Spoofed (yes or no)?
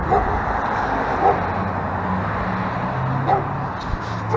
no